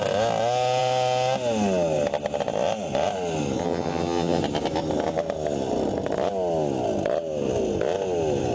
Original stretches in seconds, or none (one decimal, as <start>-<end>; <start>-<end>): 0.0-3.6; 4.4-8.5